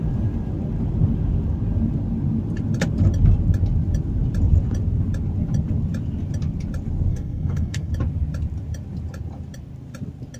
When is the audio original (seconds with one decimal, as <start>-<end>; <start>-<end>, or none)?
0.0-7.1; 7.9-10.4

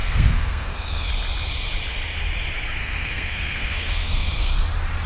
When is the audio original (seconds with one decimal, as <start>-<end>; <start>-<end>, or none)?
1.1-2.8; 4.5-5.1

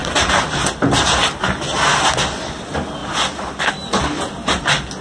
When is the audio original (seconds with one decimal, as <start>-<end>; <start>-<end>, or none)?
0.0-5.0

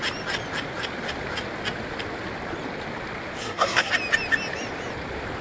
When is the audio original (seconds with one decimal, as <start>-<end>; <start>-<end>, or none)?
0.0-3.4; 3.9-5.4